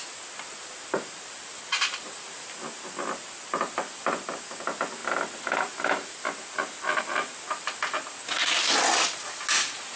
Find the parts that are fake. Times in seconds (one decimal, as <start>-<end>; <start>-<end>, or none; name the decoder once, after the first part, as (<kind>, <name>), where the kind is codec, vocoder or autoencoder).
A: none